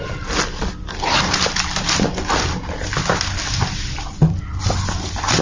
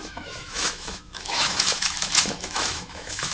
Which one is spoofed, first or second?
second